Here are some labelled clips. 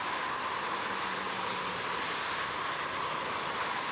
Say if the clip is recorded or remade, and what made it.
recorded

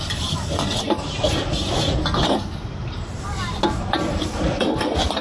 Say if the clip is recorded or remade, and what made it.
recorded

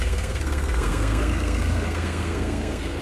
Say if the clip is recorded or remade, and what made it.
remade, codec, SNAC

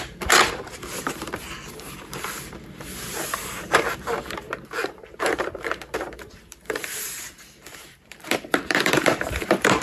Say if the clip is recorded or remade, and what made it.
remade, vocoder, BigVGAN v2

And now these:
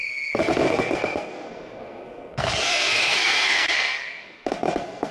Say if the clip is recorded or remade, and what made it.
remade, codec, SNAC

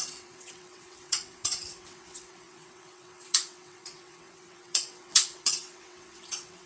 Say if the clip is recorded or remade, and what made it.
remade, vocoder, WaveNeXt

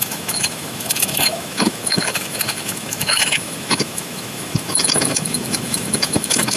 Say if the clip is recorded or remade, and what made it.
remade, autoencoder, DAC-VAE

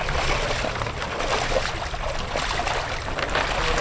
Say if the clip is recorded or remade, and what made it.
recorded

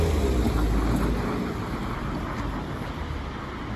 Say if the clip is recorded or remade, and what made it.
recorded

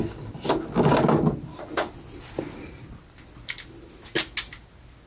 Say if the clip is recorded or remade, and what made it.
recorded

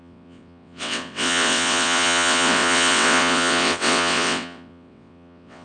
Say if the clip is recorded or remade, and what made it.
remade, vocoder, WaveNeXt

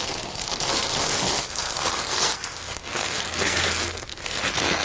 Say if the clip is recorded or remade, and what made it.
remade, codec, SNAC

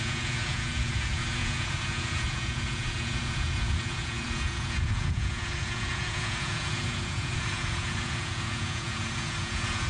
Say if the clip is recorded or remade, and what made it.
remade, vocoder, Vocos